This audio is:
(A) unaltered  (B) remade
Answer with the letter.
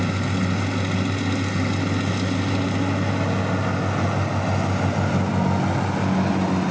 A